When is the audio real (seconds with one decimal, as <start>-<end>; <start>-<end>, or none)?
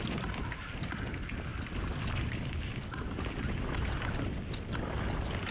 0.0-5.5